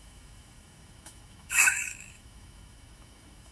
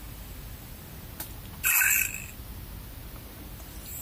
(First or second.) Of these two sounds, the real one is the second